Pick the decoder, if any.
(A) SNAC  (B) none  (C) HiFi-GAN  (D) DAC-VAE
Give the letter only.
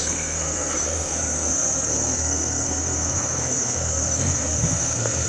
A